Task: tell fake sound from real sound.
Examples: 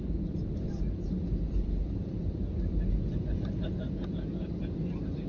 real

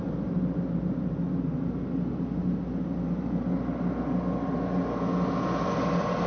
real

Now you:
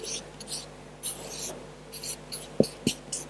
real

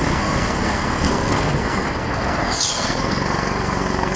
fake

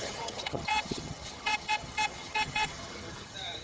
fake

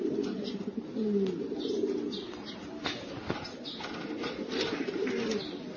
real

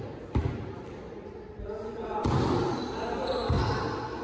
real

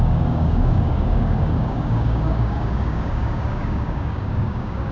fake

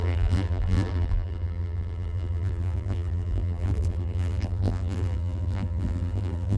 fake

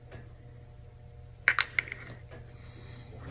real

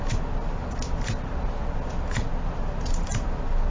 real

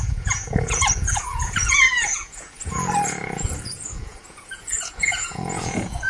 fake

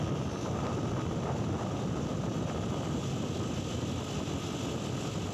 real